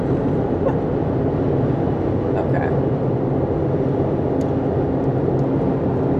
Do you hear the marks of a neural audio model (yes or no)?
no